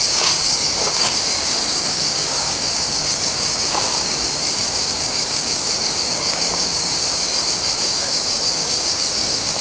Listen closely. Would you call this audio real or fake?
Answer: fake